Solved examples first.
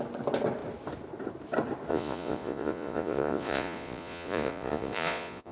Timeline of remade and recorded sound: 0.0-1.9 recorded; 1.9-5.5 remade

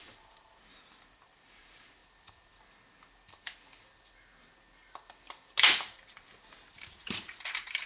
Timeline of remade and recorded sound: 0.0-2.0 remade; 2.0-6.7 recorded; 6.7-7.9 remade

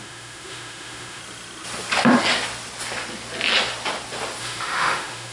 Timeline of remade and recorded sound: 0.0-1.2 remade; 1.2-4.4 recorded; 4.4-5.3 remade

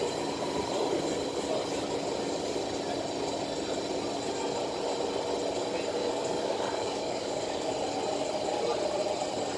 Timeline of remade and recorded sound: 0.0-6.0 recorded; 6.0-7.7 remade; 7.7-9.6 recorded